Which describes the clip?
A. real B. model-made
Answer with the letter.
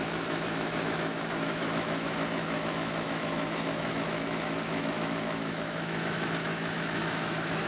B